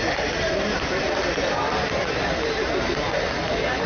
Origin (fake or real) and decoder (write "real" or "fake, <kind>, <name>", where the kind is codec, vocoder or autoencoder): real